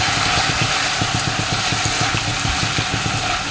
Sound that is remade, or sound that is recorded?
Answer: recorded